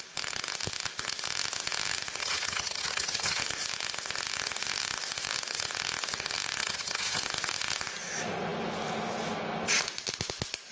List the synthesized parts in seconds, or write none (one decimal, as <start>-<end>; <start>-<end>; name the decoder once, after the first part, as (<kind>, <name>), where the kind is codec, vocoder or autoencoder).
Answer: 2.2-3.4 (vocoder, HiFi-GAN); 6.6-7.2